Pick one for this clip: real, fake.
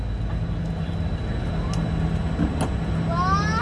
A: real